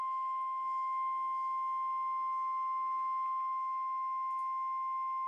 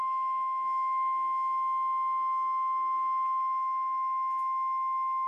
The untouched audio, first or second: first